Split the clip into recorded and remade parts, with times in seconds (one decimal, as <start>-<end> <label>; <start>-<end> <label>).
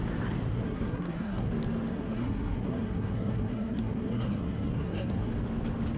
0.0-0.5 recorded; 0.5-1.5 remade; 1.5-1.9 recorded; 1.9-5.3 remade; 5.3-6.0 recorded